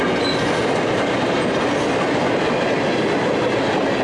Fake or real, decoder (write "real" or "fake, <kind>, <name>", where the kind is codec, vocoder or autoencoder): real